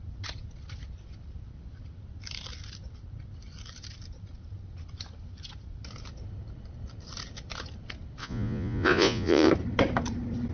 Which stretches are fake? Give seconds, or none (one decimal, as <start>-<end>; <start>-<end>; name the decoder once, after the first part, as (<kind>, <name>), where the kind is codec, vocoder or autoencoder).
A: 8.2-9.5 (vocoder, Vocos)